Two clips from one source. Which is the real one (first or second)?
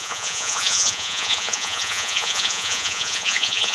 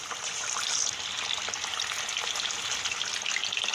second